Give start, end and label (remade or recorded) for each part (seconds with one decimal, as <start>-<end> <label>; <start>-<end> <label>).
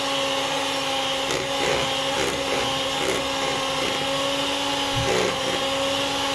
0.0-6.3 recorded